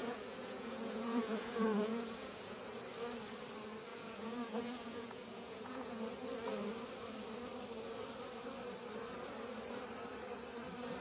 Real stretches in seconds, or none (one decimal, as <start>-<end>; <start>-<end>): 2.6-3.9; 6.0-11.0

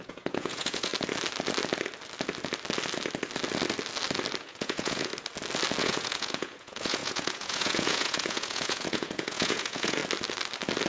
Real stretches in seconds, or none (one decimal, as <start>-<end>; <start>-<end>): 0.9-4.4; 5.1-5.8; 10.0-10.9

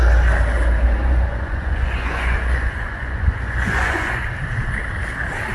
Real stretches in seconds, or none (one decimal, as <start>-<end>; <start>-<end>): 0.0-1.0; 4.3-5.5

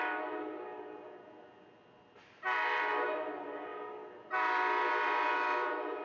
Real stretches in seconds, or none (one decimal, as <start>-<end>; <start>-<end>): 0.0-6.0

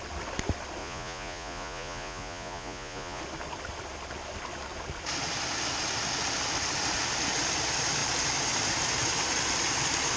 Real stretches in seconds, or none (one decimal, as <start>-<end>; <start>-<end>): 0.0-0.8; 3.2-10.2

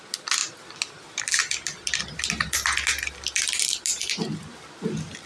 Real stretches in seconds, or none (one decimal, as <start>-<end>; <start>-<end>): 0.0-5.3

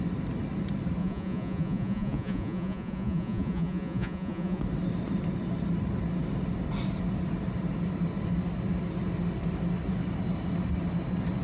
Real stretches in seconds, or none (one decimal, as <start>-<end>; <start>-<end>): 0.0-1.0; 4.6-11.4